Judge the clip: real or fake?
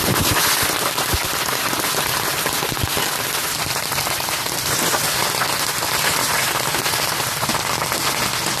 real